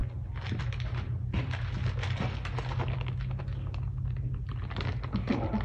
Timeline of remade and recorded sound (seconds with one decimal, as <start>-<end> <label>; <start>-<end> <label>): 0.0-5.6 recorded